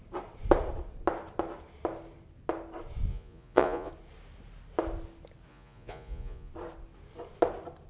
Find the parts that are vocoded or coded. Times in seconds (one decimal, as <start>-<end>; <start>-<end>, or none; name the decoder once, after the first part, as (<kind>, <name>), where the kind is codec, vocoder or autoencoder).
3.1-3.9 (vocoder, Vocos); 5.5-6.5